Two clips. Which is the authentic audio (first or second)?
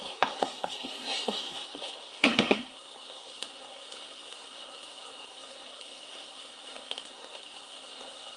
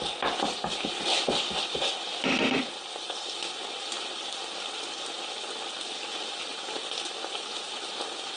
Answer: second